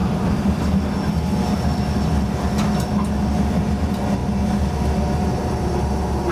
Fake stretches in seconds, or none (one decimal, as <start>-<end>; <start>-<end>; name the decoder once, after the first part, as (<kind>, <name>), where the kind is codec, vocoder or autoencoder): none